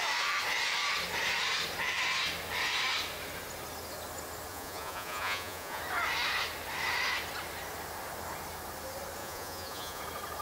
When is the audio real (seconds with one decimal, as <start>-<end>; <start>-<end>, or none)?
0.0-4.5; 5.8-9.2; 10.0-10.4